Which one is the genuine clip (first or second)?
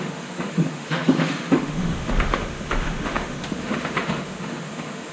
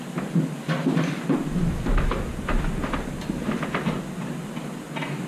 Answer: second